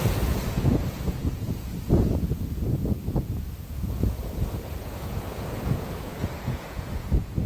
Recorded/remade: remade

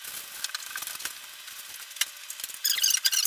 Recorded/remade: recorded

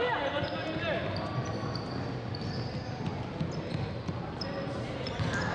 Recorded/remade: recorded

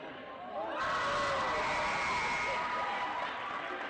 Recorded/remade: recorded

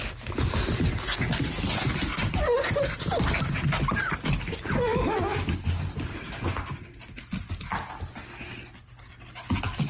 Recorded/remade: recorded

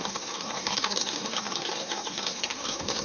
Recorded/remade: remade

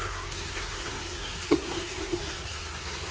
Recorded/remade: remade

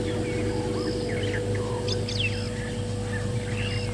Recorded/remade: recorded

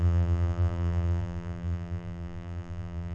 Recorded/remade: remade